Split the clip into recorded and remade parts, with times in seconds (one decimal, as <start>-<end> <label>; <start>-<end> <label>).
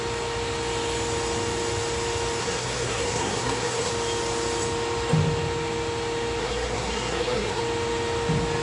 0.0-2.4 recorded; 2.4-3.9 remade; 3.9-6.4 recorded; 6.4-7.6 remade; 7.6-8.6 recorded